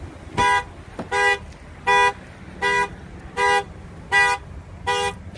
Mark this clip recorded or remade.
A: recorded